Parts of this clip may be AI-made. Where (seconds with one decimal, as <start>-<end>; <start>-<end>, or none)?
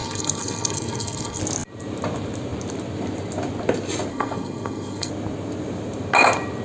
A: 0.0-1.4; 4.1-5.1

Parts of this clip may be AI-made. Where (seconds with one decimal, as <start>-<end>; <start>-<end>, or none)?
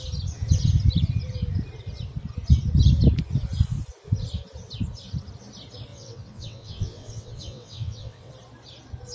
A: 5.9-8.3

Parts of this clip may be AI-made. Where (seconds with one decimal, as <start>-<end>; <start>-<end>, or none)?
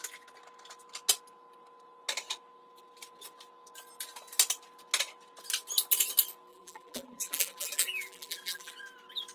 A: 6.5-8.7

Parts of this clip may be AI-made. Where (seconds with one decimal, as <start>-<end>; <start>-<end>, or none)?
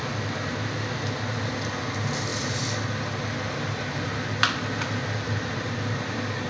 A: none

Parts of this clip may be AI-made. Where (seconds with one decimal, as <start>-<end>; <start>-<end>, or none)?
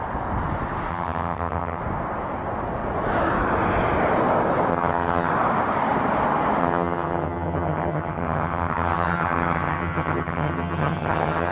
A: 0.9-1.8; 4.7-5.3; 6.6-11.5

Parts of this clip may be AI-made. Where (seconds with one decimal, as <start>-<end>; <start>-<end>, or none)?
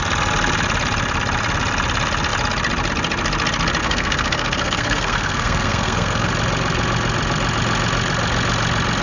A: 3.8-6.3